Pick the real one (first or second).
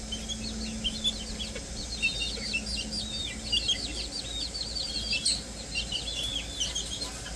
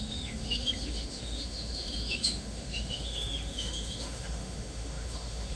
first